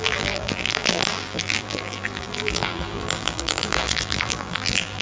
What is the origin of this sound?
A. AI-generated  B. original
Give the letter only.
A